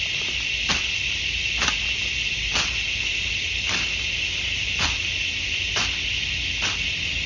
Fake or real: real